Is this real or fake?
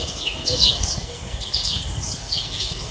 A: fake